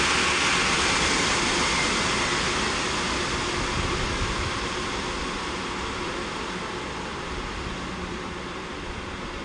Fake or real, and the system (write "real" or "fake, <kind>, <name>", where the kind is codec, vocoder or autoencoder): real